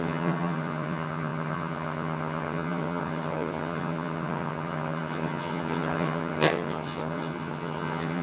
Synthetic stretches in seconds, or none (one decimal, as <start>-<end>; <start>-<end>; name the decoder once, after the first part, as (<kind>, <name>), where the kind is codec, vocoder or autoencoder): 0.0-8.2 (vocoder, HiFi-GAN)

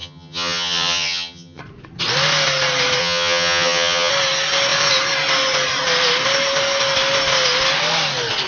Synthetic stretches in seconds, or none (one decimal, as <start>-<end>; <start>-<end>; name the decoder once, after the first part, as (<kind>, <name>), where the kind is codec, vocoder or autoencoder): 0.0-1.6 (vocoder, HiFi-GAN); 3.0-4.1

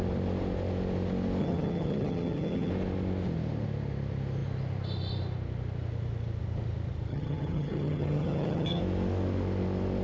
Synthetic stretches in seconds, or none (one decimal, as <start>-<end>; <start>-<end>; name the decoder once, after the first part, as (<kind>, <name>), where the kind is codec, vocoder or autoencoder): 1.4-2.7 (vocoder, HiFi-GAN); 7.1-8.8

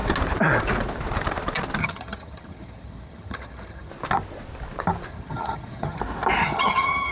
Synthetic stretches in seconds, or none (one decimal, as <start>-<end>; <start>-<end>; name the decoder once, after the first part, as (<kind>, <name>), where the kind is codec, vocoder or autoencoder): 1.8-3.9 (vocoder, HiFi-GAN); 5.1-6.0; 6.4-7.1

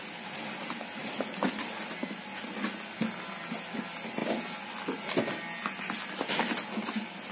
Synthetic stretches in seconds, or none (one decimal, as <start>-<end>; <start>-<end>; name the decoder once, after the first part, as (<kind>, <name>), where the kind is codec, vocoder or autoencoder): none

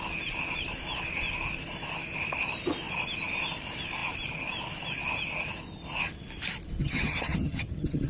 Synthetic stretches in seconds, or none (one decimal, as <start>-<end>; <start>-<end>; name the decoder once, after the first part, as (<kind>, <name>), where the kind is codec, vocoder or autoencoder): 6.8-8.1 (vocoder, HiFi-GAN)